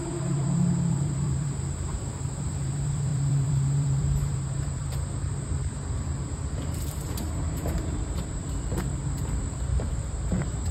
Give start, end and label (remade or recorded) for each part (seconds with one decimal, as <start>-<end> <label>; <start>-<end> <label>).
0.0-8.4 remade; 8.4-10.0 recorded; 10.0-10.7 remade